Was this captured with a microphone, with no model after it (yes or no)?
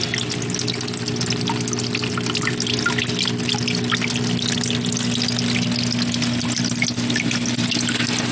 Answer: yes